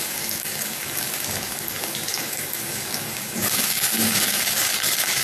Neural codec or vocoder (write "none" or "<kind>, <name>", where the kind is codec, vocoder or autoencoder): codec, DAC